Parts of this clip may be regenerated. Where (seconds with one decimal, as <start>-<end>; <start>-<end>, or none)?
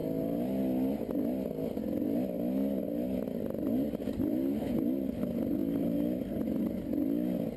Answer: none